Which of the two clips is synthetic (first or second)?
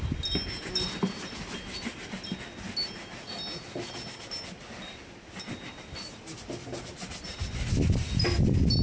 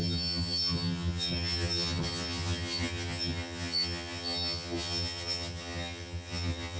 second